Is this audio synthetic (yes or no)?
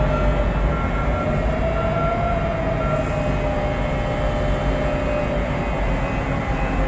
no